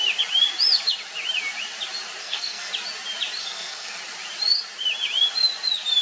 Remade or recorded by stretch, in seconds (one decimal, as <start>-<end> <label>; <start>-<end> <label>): 0.0-2.2 recorded; 2.2-2.7 remade; 2.7-3.4 recorded; 3.4-4.0 remade; 4.0-6.0 recorded